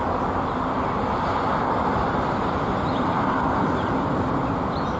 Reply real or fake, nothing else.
real